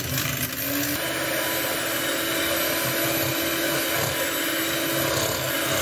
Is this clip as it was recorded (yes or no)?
yes